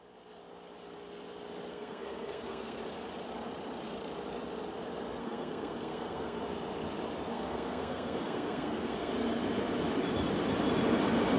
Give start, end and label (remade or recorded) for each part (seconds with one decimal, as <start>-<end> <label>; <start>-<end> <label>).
0.0-1.7 recorded; 1.7-2.8 remade; 2.8-5.2 recorded; 5.2-6.4 remade; 6.4-7.3 recorded; 7.3-9.1 remade; 9.1-11.4 recorded